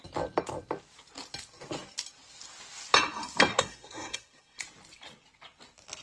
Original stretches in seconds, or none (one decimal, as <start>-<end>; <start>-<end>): 0.0-3.5; 4.6-6.0